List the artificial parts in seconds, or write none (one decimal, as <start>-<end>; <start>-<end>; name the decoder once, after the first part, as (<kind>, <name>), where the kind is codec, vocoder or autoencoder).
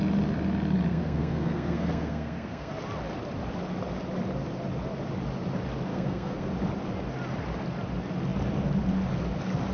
0.9-2.7 (codec, SNAC); 5.9-6.5